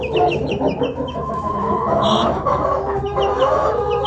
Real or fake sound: fake